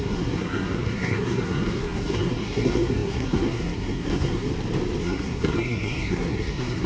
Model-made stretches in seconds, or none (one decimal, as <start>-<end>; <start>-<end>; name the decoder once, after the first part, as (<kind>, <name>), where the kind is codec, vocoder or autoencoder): 0.0-4.5 (codec, SNAC); 5.0-6.9

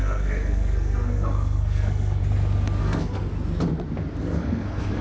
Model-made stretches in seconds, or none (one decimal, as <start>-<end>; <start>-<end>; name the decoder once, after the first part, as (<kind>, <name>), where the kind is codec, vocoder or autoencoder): 0.0-2.2 (codec, SNAC); 2.8-3.3; 4.2-5.0

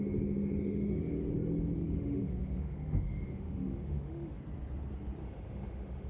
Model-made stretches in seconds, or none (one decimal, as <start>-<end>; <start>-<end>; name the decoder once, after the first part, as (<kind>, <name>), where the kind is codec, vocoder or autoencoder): 0.7-1.3 (autoencoder, DAC-VAE); 1.8-4.4; 5.2-6.1

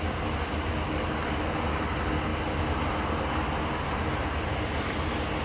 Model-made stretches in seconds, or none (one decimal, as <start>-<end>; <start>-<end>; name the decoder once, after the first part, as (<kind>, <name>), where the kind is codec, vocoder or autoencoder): none

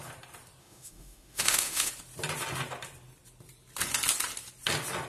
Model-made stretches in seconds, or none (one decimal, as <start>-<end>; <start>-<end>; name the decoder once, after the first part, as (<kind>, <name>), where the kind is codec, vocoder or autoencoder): 0.6-1.9 (autoencoder, DAC-VAE)

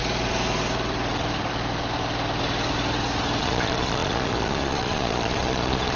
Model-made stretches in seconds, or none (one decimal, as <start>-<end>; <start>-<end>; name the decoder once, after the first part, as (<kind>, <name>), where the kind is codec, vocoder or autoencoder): 3.4-6.0 (vocoder, Vocos)

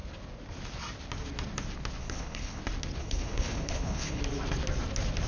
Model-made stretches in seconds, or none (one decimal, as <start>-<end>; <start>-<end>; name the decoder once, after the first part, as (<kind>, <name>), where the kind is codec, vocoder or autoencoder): 2.0-2.6 (codec, HILCodec); 3.0-4.2